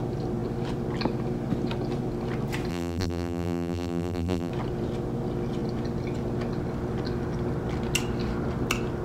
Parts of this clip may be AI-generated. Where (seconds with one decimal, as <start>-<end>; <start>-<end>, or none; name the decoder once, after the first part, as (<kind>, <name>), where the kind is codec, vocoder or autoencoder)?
2.7-4.5 (vocoder, BigVGAN v2)